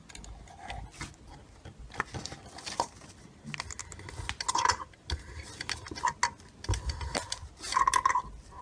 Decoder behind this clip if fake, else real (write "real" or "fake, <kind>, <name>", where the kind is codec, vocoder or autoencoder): real